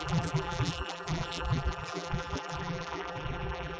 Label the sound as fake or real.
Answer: fake